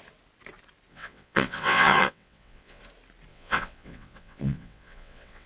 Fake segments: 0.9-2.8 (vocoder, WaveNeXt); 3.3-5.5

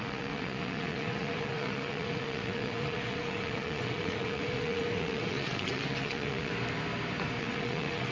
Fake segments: 0.0-6.5 (vocoder, WaveNeXt); 7.4-8.1

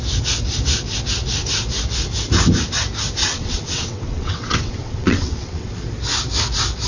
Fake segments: 3.2-5.7 (vocoder, WaveNeXt)

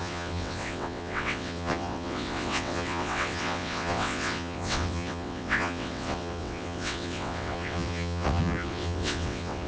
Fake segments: 0.0-9.7 (vocoder, WaveNeXt)